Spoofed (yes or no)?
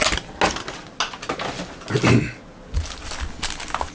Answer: no